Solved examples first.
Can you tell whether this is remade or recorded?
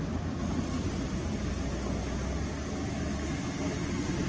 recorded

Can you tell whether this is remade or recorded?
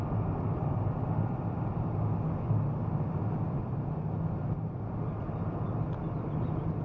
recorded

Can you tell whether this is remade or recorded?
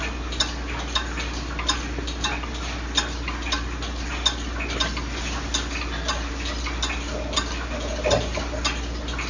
recorded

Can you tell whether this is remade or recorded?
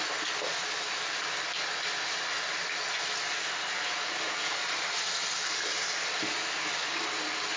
recorded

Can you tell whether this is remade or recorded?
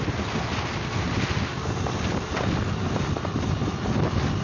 recorded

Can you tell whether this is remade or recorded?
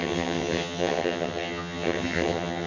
remade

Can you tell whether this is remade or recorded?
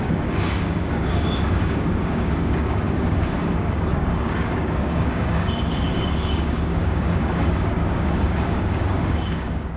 remade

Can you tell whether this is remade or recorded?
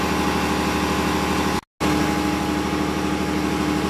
recorded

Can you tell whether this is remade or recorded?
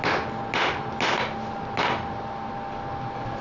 recorded